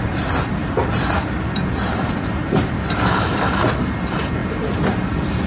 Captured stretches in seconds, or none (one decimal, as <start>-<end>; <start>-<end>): 0.0-0.6; 3.7-5.5